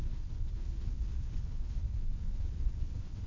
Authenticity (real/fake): fake